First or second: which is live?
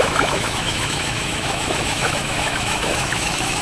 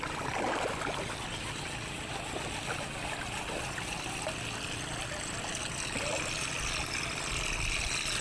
second